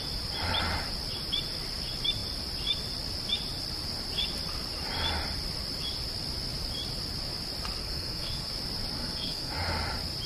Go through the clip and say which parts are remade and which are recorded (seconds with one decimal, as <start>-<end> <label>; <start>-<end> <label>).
0.0-7.8 recorded; 7.8-8.5 remade; 8.5-9.0 recorded; 9.0-9.5 remade; 9.5-10.3 recorded